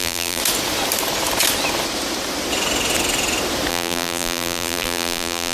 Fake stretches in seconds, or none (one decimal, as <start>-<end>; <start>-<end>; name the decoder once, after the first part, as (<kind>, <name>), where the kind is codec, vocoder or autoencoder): 0.0-0.4 (vocoder, BigVGAN v2); 3.7-5.5